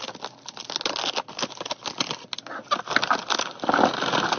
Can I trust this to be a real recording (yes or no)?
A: yes